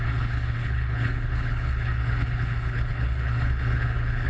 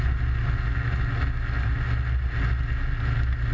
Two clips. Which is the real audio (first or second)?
second